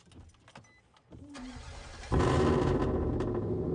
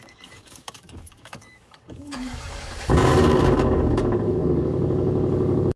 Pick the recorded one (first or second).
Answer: first